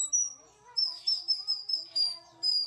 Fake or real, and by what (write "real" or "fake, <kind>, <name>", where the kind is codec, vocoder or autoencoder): real